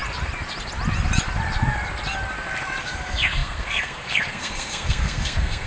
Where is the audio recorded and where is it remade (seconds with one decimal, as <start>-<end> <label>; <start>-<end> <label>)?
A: 0.0-2.8 recorded; 2.8-5.7 remade